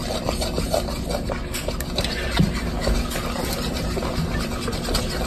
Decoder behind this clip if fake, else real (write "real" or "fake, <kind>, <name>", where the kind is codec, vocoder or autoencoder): real